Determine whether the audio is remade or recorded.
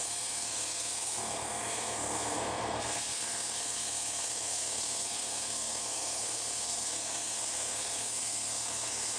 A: remade